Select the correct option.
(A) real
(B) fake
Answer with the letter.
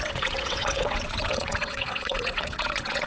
B